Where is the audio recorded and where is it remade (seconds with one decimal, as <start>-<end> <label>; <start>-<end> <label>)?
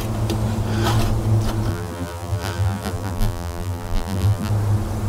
0.0-1.7 recorded; 1.7-4.5 remade; 4.5-5.1 recorded